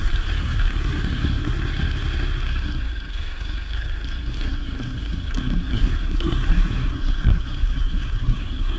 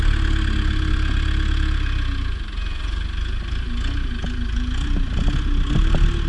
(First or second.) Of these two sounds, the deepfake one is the first